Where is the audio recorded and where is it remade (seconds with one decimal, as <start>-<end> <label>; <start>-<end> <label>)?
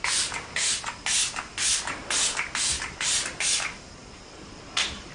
0.0-5.1 recorded